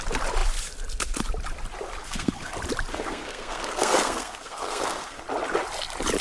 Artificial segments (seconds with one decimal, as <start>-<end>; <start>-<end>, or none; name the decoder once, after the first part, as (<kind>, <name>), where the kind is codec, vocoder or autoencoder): 2.0-2.5 (codec, SNAC); 2.9-5.2